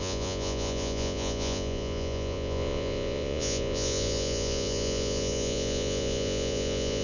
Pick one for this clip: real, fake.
fake